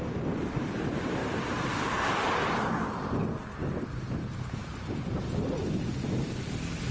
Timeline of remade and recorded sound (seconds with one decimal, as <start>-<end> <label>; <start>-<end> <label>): 0.0-6.9 recorded

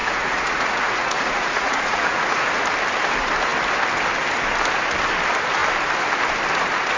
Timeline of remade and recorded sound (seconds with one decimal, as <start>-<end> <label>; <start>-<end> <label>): 0.0-2.5 remade; 2.5-7.0 recorded

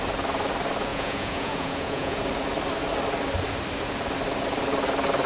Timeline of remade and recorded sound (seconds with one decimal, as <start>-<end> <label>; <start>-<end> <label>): 0.0-0.9 recorded; 0.9-2.2 remade; 2.2-5.3 recorded

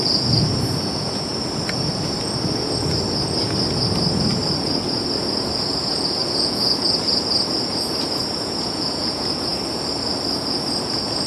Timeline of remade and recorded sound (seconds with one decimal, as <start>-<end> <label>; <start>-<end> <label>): 0.0-1.3 remade; 1.3-5.2 recorded; 5.2-9.5 remade; 9.5-10.3 recorded; 10.3-11.3 remade

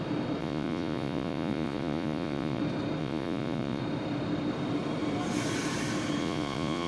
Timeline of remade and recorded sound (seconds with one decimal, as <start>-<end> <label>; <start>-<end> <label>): 0.0-0.4 recorded; 0.4-2.6 remade; 2.6-3.0 recorded; 3.0-3.8 remade; 3.8-6.2 recorded; 6.2-6.9 remade

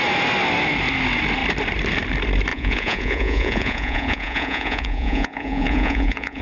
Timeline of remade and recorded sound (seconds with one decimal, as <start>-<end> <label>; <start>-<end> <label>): 0.0-2.5 recorded; 2.5-6.4 remade

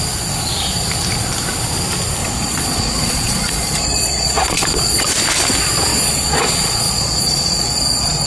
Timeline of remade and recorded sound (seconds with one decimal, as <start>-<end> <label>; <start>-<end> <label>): 0.0-2.2 recorded; 2.2-5.1 remade; 5.1-5.9 recorded; 5.9-8.3 remade

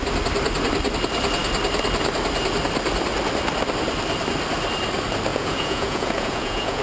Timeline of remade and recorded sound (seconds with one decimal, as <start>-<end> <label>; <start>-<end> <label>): 0.0-5.3 recorded; 5.3-6.8 remade